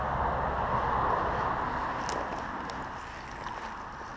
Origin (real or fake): real